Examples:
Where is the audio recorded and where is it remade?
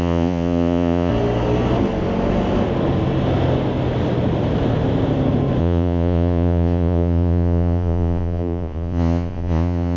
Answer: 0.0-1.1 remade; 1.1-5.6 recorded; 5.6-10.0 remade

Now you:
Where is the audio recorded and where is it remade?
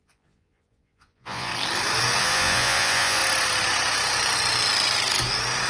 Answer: 0.0-1.5 remade; 1.5-2.2 recorded; 2.2-3.2 remade; 3.2-5.7 recorded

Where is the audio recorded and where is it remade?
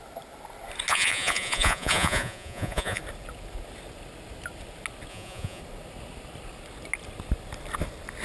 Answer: 0.0-0.9 recorded; 0.9-3.0 remade; 3.0-5.1 recorded; 5.1-5.6 remade; 5.6-8.2 recorded